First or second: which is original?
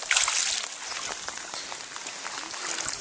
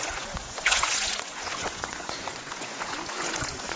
first